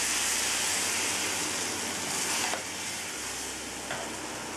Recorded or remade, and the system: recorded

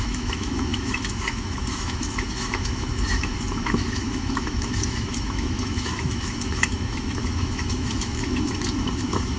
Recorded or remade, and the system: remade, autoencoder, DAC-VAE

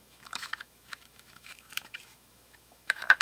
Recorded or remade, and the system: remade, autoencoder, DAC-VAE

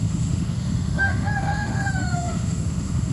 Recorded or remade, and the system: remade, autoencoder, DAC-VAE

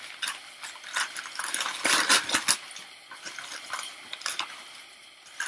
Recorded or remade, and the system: recorded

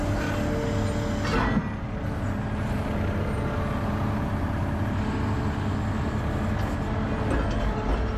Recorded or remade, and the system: recorded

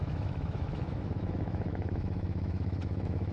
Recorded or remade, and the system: remade, autoencoder, DAC-VAE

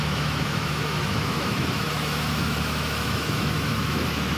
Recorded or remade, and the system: remade, autoencoder, DAC-VAE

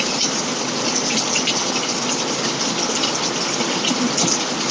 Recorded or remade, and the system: recorded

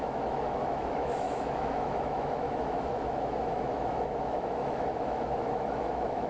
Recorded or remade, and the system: remade, autoencoder, DAC-VAE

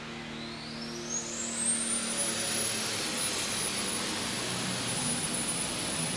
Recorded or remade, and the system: recorded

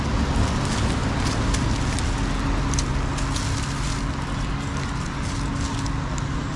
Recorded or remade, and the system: recorded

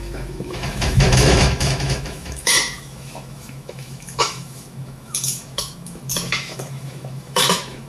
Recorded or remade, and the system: remade, autoencoder, DAC-VAE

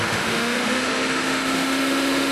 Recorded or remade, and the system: remade, autoencoder, DAC-VAE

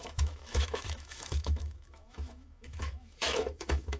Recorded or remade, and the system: remade, autoencoder, DAC-VAE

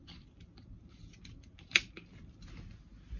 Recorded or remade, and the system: recorded